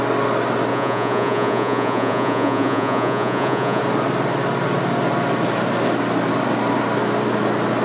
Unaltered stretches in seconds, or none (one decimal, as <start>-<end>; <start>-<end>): 0.0-0.7; 3.8-7.8